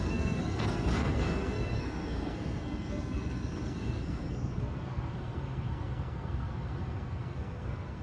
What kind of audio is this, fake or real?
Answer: fake